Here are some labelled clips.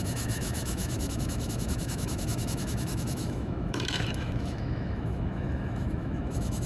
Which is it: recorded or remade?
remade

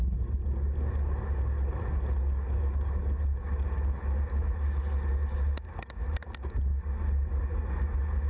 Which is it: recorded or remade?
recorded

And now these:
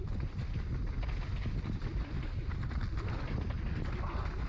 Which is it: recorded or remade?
recorded